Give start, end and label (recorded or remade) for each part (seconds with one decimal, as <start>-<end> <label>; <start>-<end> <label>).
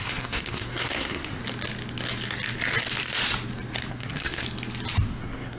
0.0-1.4 remade; 1.4-3.9 recorded; 3.9-4.4 remade; 4.4-5.0 recorded; 5.0-5.6 remade